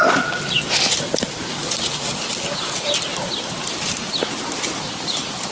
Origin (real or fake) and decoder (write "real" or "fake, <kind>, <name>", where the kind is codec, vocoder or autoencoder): real